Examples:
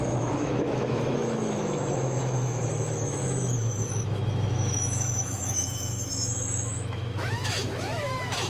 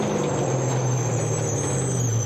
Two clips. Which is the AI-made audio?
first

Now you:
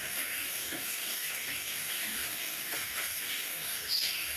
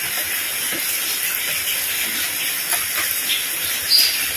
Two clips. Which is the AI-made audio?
first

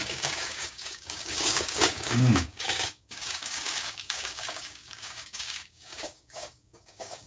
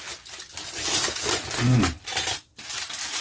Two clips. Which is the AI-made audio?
first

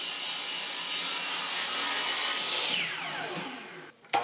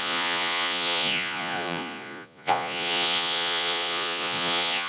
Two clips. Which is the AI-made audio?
second